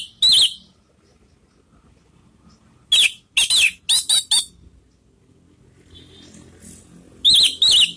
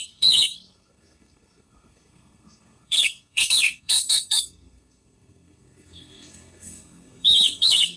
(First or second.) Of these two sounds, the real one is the first